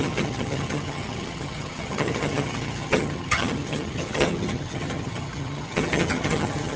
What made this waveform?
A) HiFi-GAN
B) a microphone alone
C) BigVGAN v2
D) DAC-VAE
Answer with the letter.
A